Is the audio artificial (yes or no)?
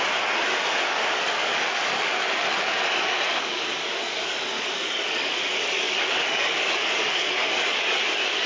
yes